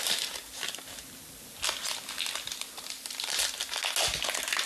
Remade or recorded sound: recorded